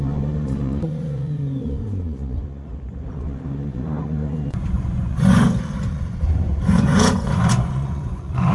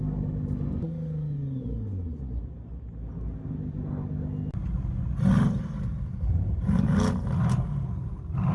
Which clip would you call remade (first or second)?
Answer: first